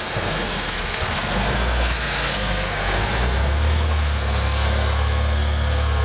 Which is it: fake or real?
fake